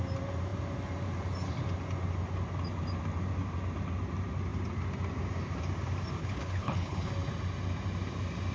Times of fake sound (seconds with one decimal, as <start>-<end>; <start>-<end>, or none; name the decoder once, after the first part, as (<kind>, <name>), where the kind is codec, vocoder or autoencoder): 6.2-7.1 (codec, HILCodec)